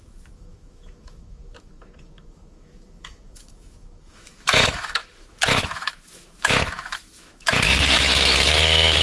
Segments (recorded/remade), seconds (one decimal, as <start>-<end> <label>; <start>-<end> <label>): 0.0-9.0 remade